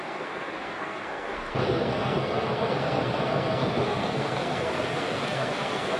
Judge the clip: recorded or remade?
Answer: remade